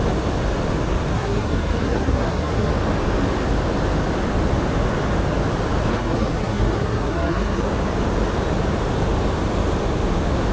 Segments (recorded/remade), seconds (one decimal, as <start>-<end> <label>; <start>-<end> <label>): 0.0-1.1 recorded; 1.1-2.7 remade; 2.7-5.9 recorded; 5.9-7.7 remade; 7.7-10.5 recorded